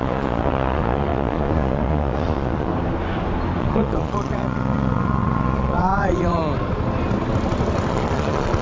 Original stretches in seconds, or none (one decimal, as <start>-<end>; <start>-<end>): 2.7-3.6; 6.4-7.9